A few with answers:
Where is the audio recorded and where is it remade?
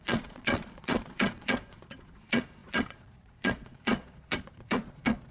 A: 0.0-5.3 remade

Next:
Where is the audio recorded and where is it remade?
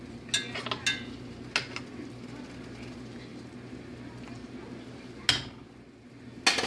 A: 0.0-6.7 recorded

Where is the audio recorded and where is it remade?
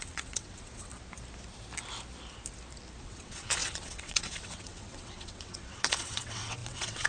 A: 0.0-0.9 remade; 0.9-3.0 recorded; 3.0-7.1 remade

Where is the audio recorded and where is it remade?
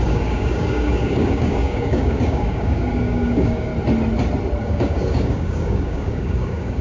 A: 0.0-3.7 remade; 3.7-4.6 recorded; 4.6-6.8 remade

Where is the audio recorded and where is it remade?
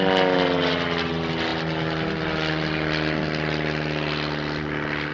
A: 0.0-5.1 recorded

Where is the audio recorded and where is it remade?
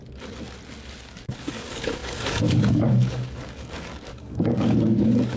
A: 0.0-1.0 recorded; 1.0-5.4 remade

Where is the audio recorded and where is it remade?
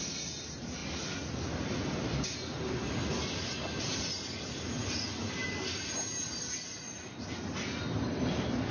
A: 0.0-8.7 recorded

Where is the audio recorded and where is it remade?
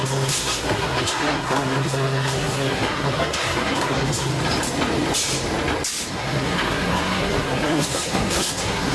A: 0.0-4.3 remade; 4.3-6.1 recorded; 6.1-8.9 remade